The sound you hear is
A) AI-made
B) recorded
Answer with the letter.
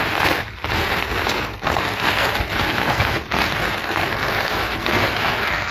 A